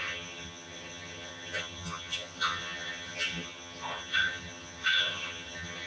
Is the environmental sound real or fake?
fake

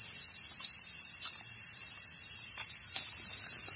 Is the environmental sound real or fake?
fake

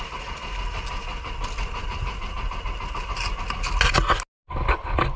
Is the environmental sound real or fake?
real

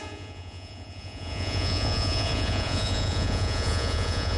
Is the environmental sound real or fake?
fake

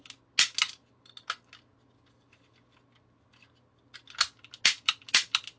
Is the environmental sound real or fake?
real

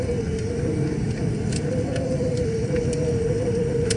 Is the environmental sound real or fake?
real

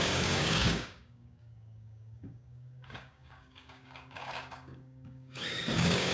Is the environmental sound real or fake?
fake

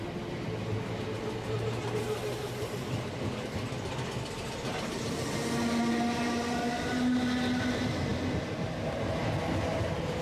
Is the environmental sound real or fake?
real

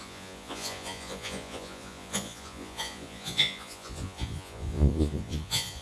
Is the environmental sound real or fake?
fake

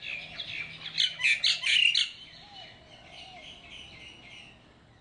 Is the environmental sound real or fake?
real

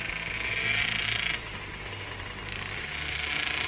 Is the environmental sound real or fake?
real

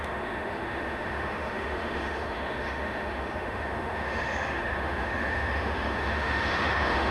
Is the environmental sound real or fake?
fake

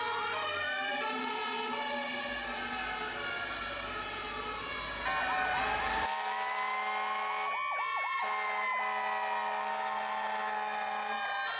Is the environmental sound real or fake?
real